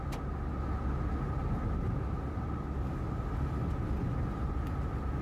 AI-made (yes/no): no